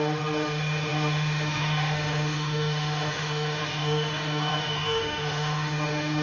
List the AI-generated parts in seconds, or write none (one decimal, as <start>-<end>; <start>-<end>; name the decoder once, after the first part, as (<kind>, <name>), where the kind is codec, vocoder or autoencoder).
0.0-6.2 (autoencoder, DAC-VAE)